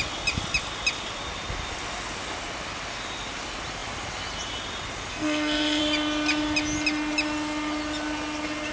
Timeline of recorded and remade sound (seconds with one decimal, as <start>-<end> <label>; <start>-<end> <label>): 0.0-5.1 recorded; 5.1-5.8 remade; 5.8-8.7 recorded